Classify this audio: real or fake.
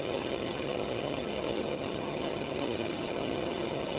fake